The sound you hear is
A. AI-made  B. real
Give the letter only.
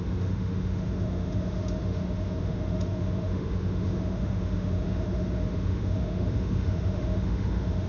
A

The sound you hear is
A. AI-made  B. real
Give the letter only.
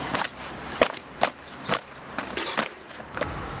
A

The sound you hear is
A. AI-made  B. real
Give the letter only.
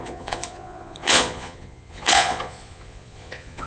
A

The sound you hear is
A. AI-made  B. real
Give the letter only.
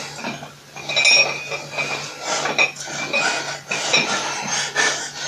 B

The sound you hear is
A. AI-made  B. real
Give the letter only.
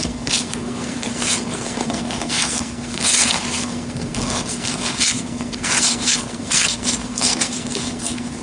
A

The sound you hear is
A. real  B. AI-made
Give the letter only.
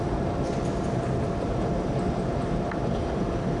B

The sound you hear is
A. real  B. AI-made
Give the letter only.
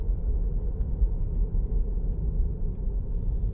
A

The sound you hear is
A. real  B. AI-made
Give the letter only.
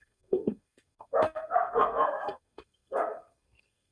B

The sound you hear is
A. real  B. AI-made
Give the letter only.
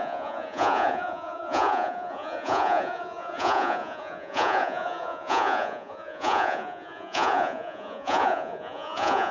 B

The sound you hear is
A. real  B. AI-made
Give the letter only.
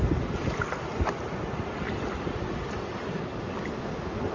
A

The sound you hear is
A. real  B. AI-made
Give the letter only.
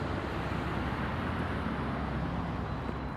A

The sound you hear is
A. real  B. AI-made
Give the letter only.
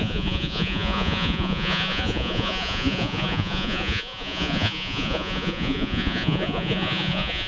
B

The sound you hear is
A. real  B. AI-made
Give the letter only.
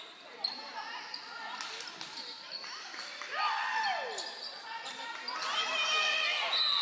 A